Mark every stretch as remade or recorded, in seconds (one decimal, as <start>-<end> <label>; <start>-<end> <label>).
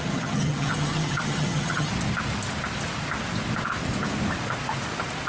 0.0-1.9 remade; 1.9-5.3 recorded